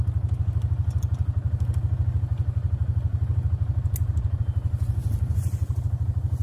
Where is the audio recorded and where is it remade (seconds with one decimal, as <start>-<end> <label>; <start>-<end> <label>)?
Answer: 0.0-6.4 recorded